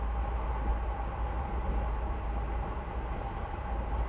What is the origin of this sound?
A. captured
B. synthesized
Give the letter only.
A